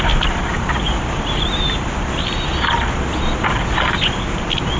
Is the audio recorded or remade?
recorded